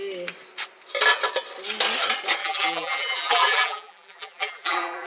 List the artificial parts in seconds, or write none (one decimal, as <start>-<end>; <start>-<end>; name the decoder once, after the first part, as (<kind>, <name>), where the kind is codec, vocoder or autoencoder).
2.4-5.1 (vocoder, BigVGAN v2)